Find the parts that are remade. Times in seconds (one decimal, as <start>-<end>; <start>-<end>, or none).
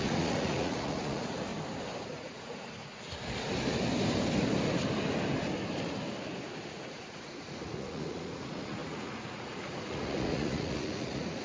0.0-1.5; 2.0-2.9; 6.7-11.4